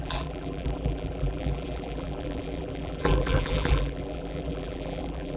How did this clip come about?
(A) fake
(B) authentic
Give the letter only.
A